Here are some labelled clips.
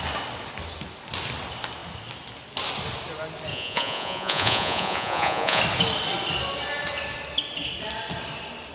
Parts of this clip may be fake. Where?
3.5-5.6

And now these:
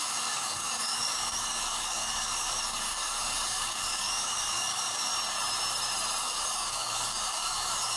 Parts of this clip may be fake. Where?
0.0-5.1; 6.2-8.0